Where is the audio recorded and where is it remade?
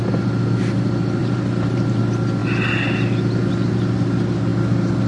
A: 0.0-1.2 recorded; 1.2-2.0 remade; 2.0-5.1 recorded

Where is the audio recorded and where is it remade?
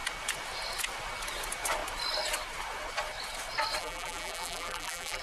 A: 0.0-3.8 recorded; 3.8-5.2 remade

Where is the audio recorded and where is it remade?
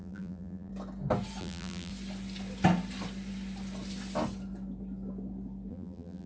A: 0.0-0.7 remade; 0.7-1.4 recorded; 1.4-1.9 remade; 1.9-5.7 recorded; 5.7-6.3 remade